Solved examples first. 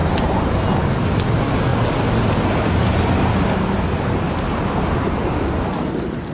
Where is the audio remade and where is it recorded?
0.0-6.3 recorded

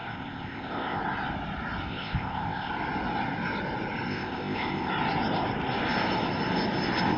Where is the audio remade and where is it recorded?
0.0-1.0 remade; 1.0-1.9 recorded; 1.9-2.7 remade; 2.7-4.1 recorded; 4.1-4.9 remade; 4.9-7.2 recorded

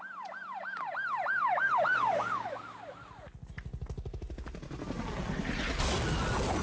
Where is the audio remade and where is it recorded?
0.0-6.6 recorded

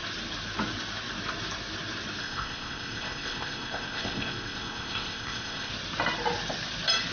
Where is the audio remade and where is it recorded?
0.0-2.2 recorded; 2.2-5.7 remade; 5.7-7.1 recorded

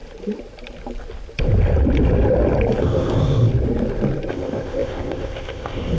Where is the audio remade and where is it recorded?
0.0-2.8 recorded; 2.8-3.5 remade; 3.5-4.3 recorded; 4.3-6.0 remade